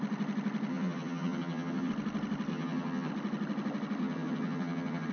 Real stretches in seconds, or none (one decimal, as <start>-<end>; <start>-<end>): 0.0-0.7; 1.9-2.5; 3.1-4.0